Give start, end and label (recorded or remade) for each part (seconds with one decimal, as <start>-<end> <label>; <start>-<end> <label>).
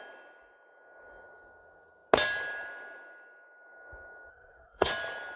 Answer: 0.0-4.3 recorded; 4.3-4.9 remade; 4.9-5.4 recorded